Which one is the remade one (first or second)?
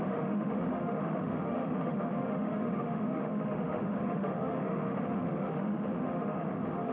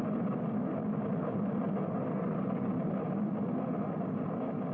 first